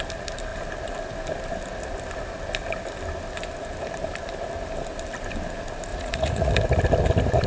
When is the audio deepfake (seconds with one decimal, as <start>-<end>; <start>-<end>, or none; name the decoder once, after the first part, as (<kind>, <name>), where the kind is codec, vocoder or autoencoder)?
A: 5.9-6.5 (vocoder, Vocos)